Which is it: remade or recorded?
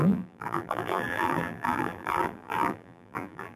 remade